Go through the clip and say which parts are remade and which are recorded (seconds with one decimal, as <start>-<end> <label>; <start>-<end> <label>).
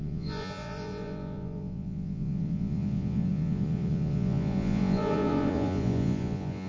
0.0-6.7 remade